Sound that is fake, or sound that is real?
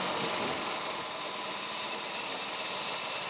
real